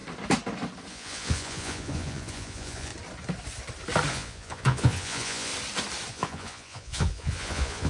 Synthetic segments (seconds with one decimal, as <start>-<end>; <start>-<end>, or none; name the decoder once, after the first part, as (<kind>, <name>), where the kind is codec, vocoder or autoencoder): 0.9-2.9 (vocoder, Vocos); 4.1-5.5; 6.1-7.9